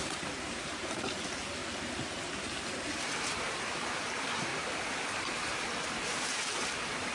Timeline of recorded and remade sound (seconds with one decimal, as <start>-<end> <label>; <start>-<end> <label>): 0.0-1.6 remade; 1.6-2.4 recorded; 2.4-4.5 remade; 4.5-5.2 recorded; 5.2-7.1 remade